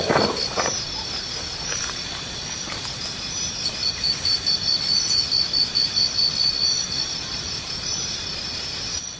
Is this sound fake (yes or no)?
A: no